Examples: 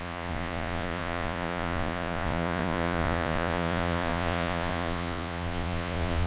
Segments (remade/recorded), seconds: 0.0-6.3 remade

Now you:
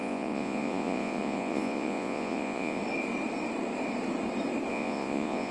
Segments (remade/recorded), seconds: 0.0-2.8 remade; 2.8-4.7 recorded; 4.7-5.5 remade

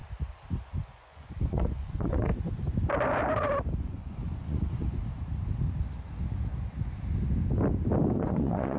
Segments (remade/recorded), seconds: 0.0-0.6 recorded; 0.6-2.3 remade; 2.3-3.8 recorded; 3.8-5.0 remade; 5.0-8.1 recorded; 8.1-8.8 remade

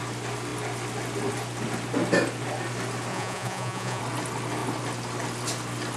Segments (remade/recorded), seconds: 0.0-3.1 recorded; 3.1-4.0 remade; 4.0-6.0 recorded

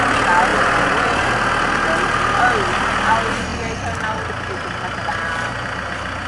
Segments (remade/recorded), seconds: 0.0-0.5 recorded; 0.5-1.3 remade; 1.3-6.3 recorded

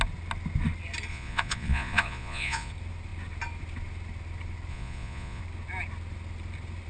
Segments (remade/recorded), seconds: 0.0-1.1 recorded; 1.1-2.7 remade; 2.7-4.7 recorded; 4.7-5.4 remade; 5.4-6.9 recorded